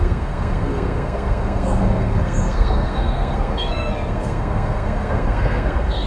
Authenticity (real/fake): fake